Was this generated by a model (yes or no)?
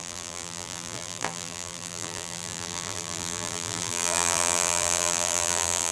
yes